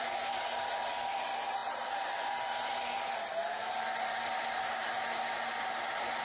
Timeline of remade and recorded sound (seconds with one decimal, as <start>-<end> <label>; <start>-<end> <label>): 0.0-6.2 recorded